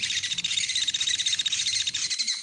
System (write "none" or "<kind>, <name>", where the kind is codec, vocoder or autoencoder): none